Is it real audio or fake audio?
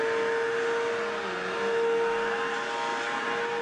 real